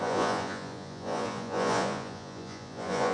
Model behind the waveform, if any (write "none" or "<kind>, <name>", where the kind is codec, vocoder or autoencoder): vocoder, Vocos